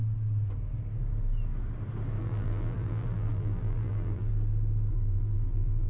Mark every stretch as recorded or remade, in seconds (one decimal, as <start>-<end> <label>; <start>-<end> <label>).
0.0-2.2 recorded; 2.2-4.3 remade; 4.3-4.9 recorded; 4.9-5.9 remade